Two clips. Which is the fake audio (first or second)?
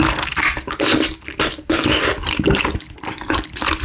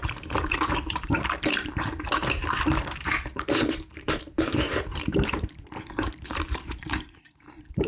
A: second